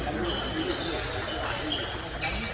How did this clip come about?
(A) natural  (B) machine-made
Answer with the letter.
A